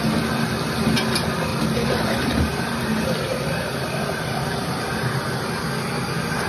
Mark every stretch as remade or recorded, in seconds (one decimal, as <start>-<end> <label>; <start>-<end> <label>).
0.0-1.5 recorded; 1.5-2.8 remade; 2.8-3.3 recorded; 3.3-5.6 remade; 5.6-6.5 recorded